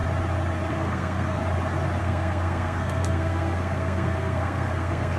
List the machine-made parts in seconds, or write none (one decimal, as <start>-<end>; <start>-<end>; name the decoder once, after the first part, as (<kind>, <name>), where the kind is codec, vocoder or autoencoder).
0.7-1.4 (codec, SNAC); 2.0-5.2